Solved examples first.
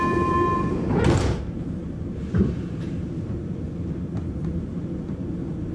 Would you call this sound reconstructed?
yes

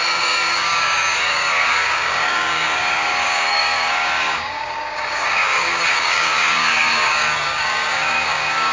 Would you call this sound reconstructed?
yes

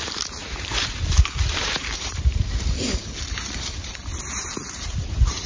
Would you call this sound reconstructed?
yes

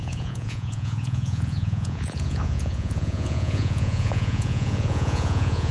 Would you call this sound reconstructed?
yes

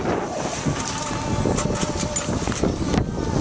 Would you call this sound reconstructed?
no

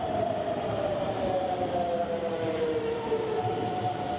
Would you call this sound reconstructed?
no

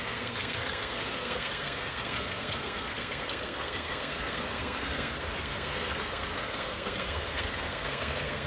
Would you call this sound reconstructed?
yes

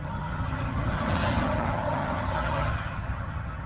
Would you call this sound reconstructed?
yes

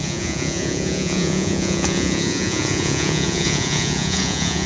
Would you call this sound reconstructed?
yes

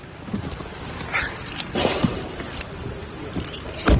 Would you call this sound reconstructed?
yes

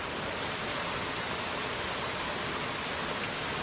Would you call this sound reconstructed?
yes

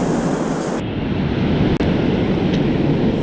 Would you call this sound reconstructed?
no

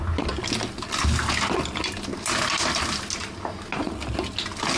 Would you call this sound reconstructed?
no